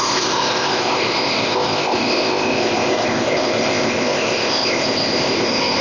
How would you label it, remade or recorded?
remade